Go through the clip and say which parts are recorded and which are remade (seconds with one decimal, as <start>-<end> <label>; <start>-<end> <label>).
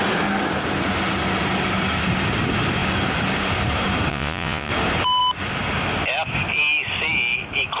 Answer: 0.0-4.1 recorded; 4.1-4.7 remade; 4.7-7.8 recorded